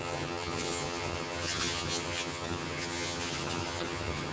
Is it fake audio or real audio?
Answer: fake